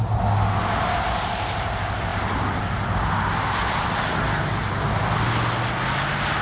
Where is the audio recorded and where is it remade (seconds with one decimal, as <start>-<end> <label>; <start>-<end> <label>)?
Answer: 0.0-6.4 recorded